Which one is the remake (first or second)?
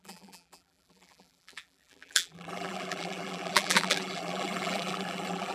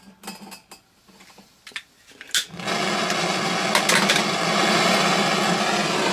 first